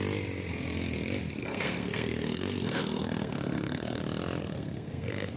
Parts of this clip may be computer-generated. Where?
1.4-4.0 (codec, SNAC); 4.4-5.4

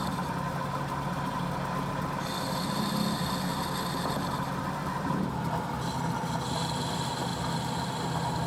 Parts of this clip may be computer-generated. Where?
3.5-5.9 (vocoder, BigVGAN v2); 7.3-7.9